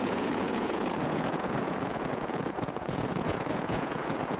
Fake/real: fake